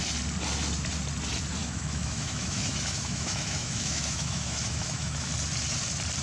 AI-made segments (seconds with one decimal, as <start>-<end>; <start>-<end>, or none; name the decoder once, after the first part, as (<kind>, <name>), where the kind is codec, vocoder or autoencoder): 1.6-5.3 (autoencoder, DAC-VAE)